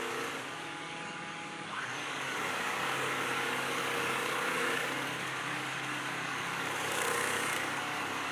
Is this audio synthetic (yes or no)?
yes